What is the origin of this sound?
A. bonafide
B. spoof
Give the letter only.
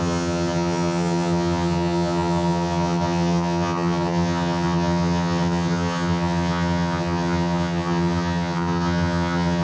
B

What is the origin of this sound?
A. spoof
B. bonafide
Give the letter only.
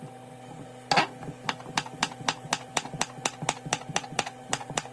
B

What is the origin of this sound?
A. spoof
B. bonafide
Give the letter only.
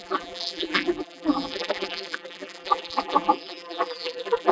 A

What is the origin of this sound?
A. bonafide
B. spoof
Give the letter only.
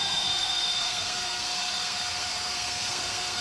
B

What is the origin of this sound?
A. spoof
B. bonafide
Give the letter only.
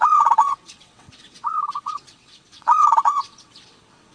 A